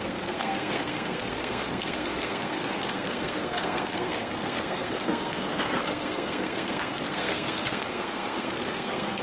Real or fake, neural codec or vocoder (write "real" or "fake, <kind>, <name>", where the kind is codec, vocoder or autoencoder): fake, codec, SNAC